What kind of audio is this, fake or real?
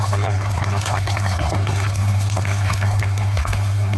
fake